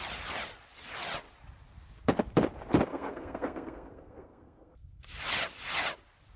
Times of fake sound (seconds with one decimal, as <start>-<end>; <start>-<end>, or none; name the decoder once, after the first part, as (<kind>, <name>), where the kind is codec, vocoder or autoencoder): 2.9-5.1 (codec, SNAC)